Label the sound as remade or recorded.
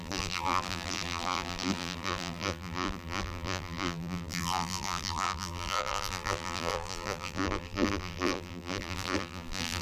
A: remade